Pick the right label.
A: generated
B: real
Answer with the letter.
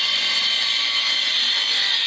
B